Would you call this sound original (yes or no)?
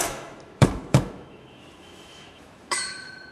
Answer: no